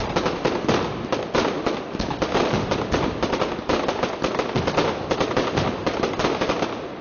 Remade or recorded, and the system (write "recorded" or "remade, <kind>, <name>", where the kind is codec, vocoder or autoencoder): recorded